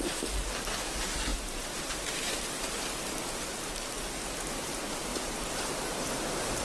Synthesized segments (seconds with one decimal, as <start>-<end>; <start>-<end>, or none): 1.3-2.7